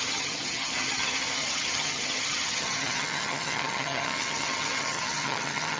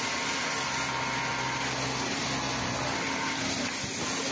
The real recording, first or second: second